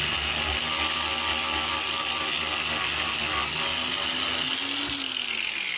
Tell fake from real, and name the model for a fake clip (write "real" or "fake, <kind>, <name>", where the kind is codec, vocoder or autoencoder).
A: real